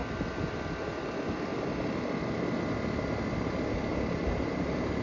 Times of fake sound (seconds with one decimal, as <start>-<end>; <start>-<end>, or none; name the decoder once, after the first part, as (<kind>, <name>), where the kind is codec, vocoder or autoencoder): none